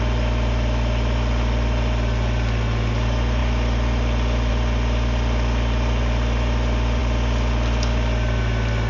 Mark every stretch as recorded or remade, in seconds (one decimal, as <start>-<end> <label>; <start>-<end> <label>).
0.0-8.9 recorded